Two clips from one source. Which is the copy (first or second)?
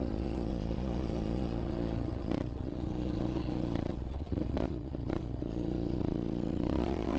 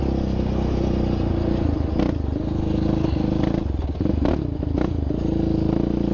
first